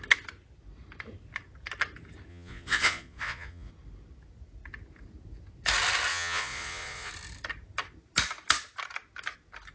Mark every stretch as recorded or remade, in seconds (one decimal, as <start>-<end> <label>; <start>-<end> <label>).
0.0-2.3 recorded; 2.3-3.7 remade; 3.7-6.1 recorded; 6.1-7.1 remade; 7.1-9.7 recorded